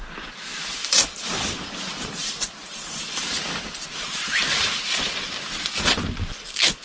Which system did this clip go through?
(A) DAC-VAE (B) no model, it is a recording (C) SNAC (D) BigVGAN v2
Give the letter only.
D